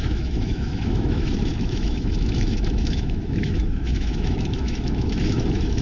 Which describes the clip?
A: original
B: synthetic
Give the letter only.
B